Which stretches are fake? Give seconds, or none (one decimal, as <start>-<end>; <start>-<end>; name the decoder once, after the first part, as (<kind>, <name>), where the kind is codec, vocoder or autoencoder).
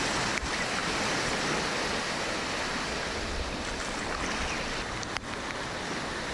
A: none